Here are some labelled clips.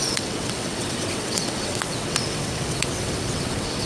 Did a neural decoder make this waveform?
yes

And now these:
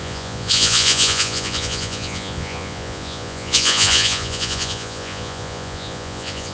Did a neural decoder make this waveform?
yes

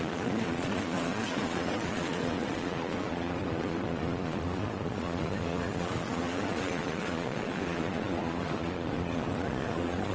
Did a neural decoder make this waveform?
yes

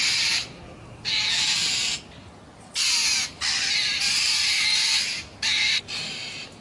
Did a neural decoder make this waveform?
no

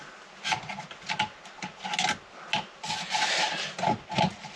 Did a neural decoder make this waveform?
no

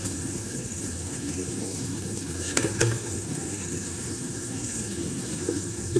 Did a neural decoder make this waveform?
yes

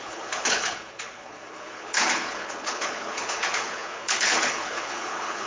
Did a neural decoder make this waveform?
yes